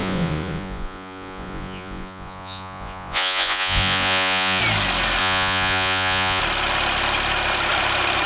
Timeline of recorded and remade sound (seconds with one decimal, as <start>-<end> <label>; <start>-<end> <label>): 0.0-4.6 remade; 4.6-5.2 recorded; 5.2-6.4 remade; 6.4-8.3 recorded